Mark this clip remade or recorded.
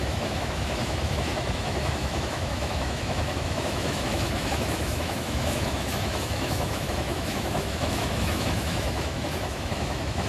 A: remade